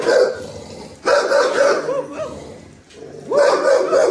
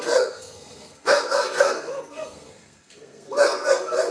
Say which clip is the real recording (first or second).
first